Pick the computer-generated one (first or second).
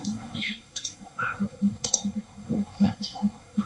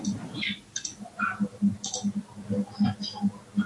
first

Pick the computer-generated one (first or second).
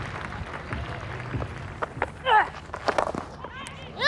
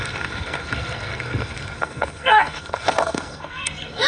second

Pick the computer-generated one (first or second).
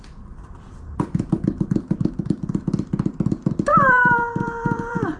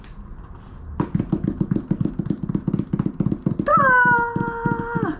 first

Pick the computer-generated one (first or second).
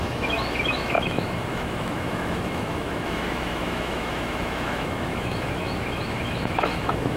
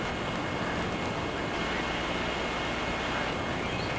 first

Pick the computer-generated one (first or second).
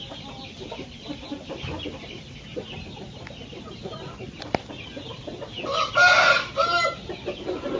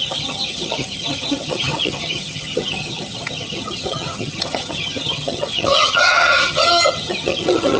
second